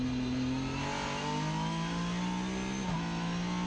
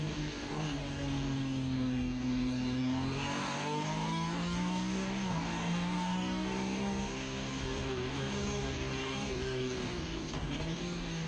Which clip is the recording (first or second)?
first